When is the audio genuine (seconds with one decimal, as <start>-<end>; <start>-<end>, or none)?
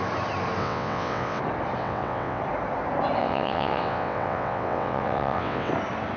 0.0-0.6; 1.4-1.8; 2.4-3.2; 5.7-6.2